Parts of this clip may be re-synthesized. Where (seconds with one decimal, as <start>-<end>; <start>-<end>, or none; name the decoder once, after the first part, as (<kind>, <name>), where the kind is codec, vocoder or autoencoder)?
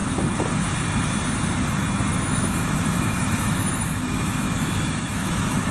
2.1-5.7 (autoencoder, DAC-VAE)